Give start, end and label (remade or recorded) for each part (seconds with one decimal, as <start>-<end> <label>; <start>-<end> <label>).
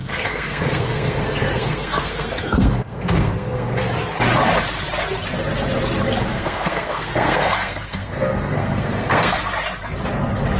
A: 0.0-3.8 remade; 3.8-6.3 recorded; 6.3-9.4 remade; 9.4-10.6 recorded